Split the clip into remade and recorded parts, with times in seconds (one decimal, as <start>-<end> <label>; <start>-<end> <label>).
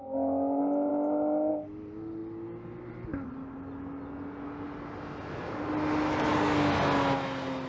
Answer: 0.0-7.7 recorded